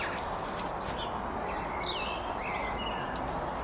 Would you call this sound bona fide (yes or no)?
yes